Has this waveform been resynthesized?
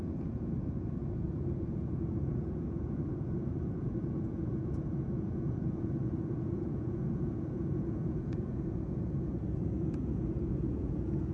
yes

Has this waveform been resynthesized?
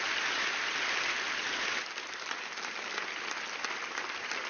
no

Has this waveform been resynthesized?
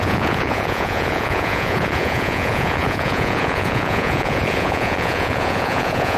yes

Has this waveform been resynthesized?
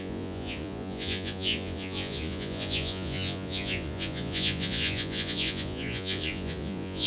yes